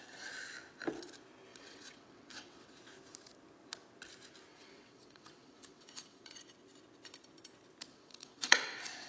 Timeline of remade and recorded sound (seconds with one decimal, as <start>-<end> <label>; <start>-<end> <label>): 0.0-1.5 recorded; 1.5-2.8 remade; 2.8-4.5 recorded; 4.5-6.4 remade; 6.4-7.9 recorded; 7.9-9.1 remade